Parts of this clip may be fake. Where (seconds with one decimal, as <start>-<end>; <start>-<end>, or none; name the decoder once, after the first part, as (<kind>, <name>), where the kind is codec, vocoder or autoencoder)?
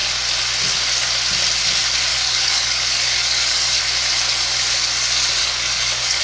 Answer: 2.1-3.8 (codec, DAC); 5.4-6.2